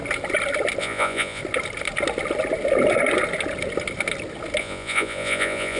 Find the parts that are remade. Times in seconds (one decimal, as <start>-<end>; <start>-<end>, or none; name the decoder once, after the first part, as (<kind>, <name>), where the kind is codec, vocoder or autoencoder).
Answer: 0.8-1.4 (vocoder, Vocos); 4.6-5.8